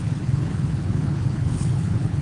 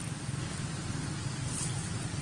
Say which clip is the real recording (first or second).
second